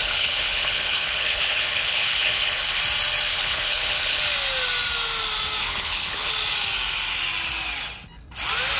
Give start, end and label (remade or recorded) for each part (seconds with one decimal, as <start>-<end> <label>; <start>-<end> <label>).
0.0-2.8 remade; 2.8-3.3 recorded; 3.3-4.2 remade; 4.2-5.6 recorded; 5.6-6.3 remade; 6.3-8.8 recorded